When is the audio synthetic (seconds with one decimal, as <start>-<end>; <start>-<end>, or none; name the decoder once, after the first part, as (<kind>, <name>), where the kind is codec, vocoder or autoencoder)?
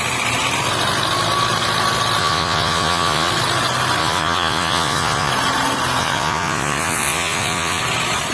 2.2-3.3 (vocoder, Vocos); 4.0-5.3; 6.0-7.8